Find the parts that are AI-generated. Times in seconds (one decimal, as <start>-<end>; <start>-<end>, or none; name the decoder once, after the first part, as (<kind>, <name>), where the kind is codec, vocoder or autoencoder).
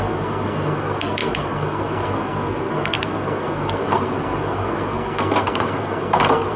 0.0-6.6 (codec, SNAC)